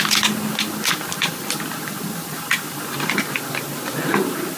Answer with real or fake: real